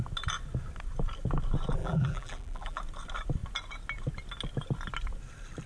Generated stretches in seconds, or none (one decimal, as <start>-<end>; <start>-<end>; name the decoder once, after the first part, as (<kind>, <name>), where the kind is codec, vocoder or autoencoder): 1.8-2.8 (vocoder, BigVGAN v2)

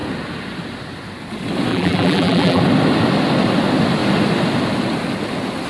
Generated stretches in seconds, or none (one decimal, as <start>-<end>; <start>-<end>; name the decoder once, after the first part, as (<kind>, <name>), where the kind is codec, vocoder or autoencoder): 1.7-2.6 (vocoder, BigVGAN v2)

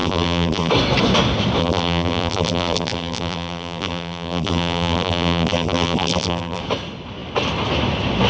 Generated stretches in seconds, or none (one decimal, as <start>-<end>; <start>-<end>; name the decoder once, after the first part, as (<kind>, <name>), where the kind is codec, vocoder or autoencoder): 0.0-0.7 (vocoder, BigVGAN v2); 1.6-6.6

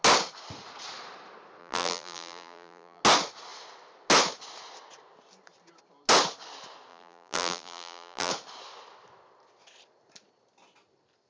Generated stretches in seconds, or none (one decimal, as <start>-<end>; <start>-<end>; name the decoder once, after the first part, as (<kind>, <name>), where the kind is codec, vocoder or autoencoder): 1.6-3.0 (vocoder, BigVGAN v2); 6.9-8.3

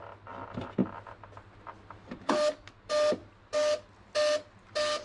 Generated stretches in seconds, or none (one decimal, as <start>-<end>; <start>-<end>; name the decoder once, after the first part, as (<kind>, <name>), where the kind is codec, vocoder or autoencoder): none

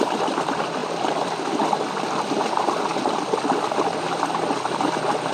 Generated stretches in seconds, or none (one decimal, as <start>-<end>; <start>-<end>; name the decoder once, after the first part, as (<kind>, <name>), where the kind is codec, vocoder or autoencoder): none

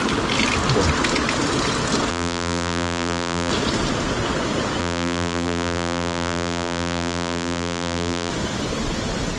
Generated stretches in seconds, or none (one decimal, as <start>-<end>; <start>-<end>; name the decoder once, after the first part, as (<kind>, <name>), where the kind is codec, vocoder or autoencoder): 2.1-3.5 (vocoder, BigVGAN v2); 4.8-8.3

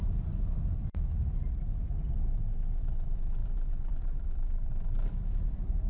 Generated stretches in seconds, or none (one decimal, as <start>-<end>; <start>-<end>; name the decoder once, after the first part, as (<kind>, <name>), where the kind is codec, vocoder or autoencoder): 0.0-0.5 (vocoder, BigVGAN v2); 2.8-5.9